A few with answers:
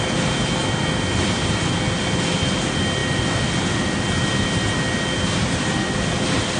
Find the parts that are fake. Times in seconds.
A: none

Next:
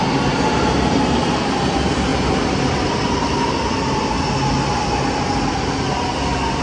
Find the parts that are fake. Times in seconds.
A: none

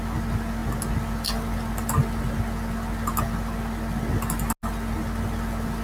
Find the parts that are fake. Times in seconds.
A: none

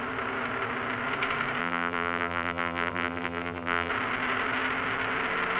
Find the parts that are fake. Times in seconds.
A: 1.6-3.9 (vocoder, BigVGAN v2)

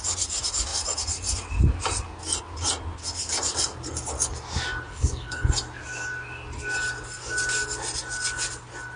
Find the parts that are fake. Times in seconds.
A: 4.9-5.5 (codec, HILCodec)

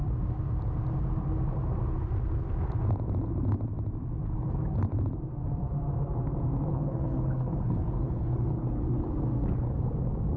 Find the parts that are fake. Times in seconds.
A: 6.7-9.1 (codec, HILCodec)